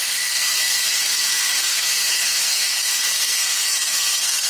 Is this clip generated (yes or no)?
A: yes